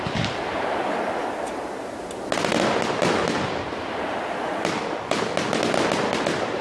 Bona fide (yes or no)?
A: yes